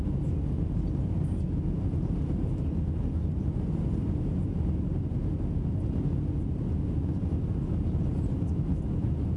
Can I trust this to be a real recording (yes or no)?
yes